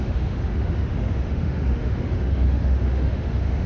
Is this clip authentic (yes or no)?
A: no